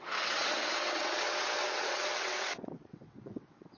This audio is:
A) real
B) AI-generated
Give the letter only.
B